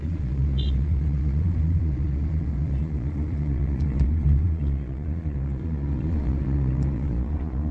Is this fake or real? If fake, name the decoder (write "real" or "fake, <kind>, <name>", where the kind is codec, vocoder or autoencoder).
fake, vocoder, Vocos